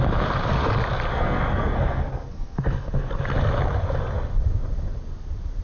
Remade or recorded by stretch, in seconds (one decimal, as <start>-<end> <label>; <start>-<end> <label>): 0.0-1.1 recorded; 1.1-3.1 remade; 3.1-5.6 recorded